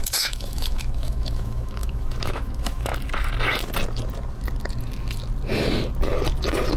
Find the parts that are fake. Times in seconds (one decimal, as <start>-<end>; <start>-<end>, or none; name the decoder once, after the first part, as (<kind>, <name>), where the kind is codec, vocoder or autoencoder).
0.0-2.9 (autoencoder, DAC-VAE)